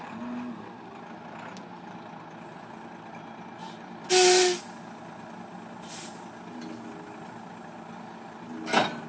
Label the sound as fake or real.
real